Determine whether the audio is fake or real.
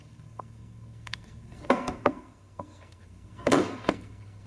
fake